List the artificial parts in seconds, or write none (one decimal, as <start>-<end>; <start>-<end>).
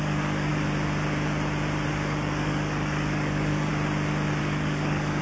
0.0-0.5; 1.9-3.7; 4.4-5.2